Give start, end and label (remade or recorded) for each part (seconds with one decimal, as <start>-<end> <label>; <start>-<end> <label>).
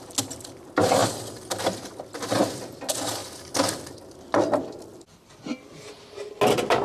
0.0-6.8 recorded